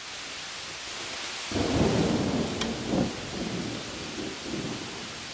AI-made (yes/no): no